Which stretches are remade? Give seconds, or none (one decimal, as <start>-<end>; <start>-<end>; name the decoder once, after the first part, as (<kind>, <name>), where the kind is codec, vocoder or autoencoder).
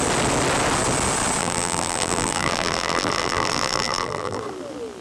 1.4-4.4 (vocoder, BigVGAN v2)